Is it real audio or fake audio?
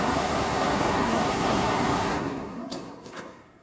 fake